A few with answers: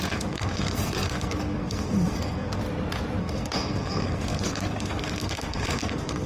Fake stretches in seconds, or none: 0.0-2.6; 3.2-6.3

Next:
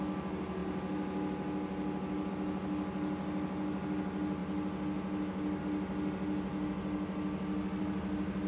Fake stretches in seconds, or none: none

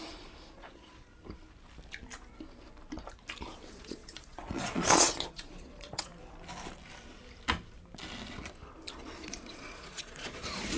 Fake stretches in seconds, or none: 0.0-1.1; 3.7-6.1; 8.9-10.8

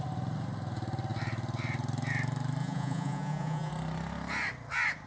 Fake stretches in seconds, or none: 2.6-3.7

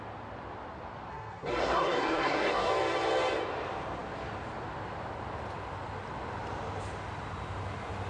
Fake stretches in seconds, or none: 1.1-2.7

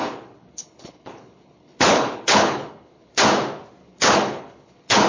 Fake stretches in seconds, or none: 0.0-3.1; 3.8-5.1

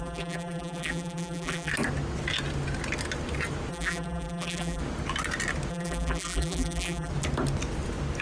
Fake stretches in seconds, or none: 0.0-1.7; 3.7-4.8; 5.7-7.1

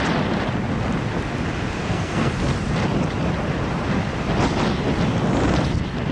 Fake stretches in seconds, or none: 1.8-2.3